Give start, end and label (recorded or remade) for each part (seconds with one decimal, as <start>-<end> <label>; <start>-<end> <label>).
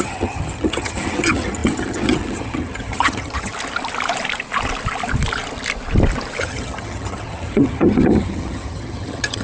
0.0-3.5 remade; 3.5-6.4 recorded; 6.4-9.4 remade